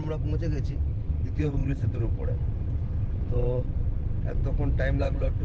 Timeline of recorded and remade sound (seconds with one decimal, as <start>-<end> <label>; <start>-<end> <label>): 0.0-0.7 recorded; 0.7-4.4 remade; 4.4-5.0 recorded; 5.0-5.4 remade